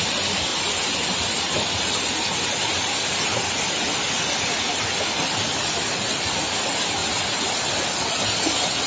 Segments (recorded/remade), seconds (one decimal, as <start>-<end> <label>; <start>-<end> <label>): 0.0-8.9 recorded